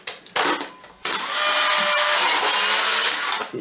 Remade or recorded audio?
recorded